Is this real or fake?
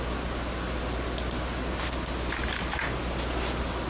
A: real